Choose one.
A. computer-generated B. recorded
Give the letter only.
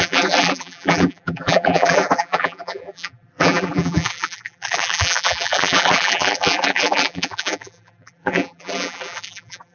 A